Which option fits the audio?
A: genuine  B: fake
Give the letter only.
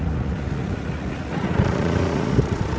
B